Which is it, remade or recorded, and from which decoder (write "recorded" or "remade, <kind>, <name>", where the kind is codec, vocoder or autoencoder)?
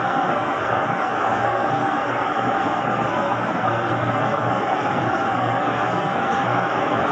remade, codec, SNAC